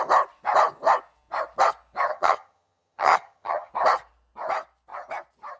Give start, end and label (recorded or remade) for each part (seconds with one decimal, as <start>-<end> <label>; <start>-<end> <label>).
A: 0.0-2.1 recorded; 2.1-3.7 remade; 3.7-5.6 recorded